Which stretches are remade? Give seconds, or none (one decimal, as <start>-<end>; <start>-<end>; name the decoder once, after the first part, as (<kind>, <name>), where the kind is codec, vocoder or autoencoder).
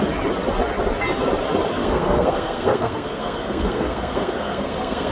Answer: 1.8-5.1 (codec, SNAC)